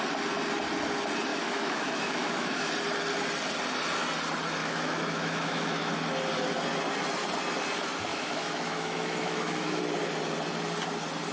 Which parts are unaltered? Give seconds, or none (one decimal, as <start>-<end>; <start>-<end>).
0.0-1.3; 2.7-4.6; 5.9-8.1; 9.8-11.3